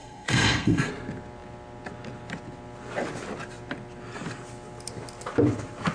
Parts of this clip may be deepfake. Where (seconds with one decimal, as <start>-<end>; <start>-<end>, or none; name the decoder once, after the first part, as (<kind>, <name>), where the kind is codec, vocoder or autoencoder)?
0.0-0.9 (codec, SNAC)